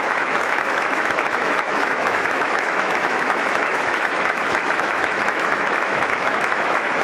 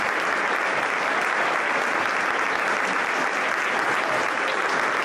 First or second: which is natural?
second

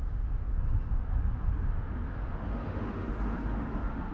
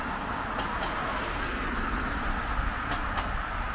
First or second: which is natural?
second